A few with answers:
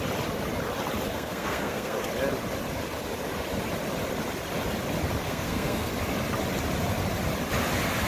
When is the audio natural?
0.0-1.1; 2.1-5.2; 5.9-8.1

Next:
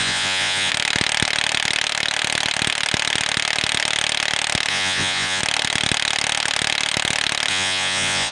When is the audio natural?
0.7-4.7; 5.4-7.5

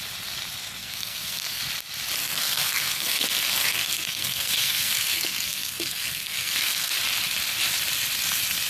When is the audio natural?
0.0-0.8; 1.6-2.2; 6.9-8.7